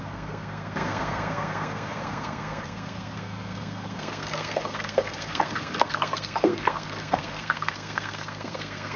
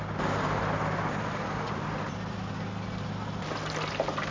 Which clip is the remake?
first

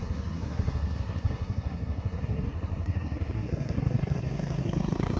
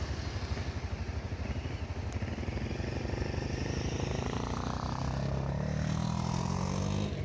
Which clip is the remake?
first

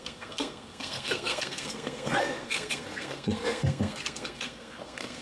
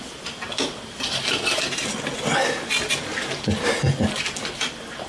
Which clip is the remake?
first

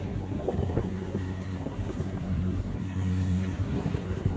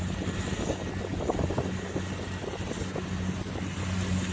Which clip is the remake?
first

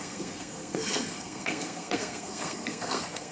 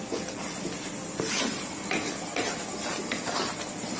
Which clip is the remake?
first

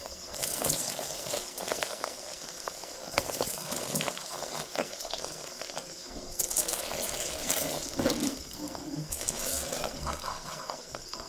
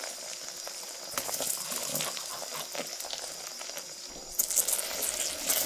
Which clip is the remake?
first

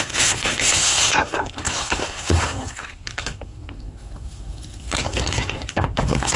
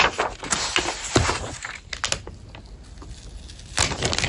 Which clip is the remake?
first